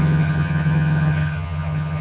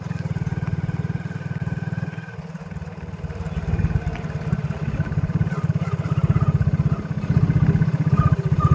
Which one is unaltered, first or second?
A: second